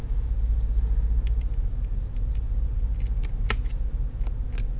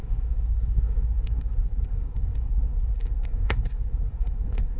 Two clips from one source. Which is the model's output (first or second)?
second